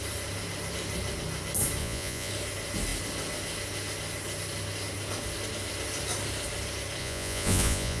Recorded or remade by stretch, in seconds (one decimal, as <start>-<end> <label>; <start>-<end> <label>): 0.0-1.8 recorded; 1.8-2.3 remade; 2.3-7.0 recorded; 7.0-8.0 remade